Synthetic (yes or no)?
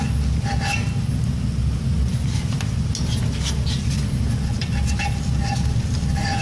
no